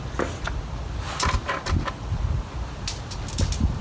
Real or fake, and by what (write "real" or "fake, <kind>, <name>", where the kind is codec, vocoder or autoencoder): real